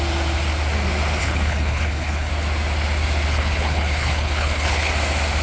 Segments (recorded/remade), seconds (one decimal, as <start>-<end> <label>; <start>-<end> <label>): 0.0-1.2 recorded; 1.2-2.3 remade; 2.3-3.3 recorded; 3.3-4.9 remade; 4.9-5.4 recorded